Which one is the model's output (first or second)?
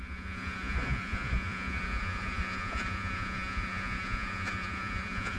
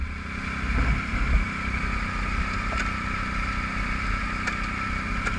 first